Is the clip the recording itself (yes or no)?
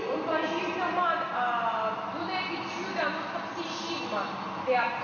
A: yes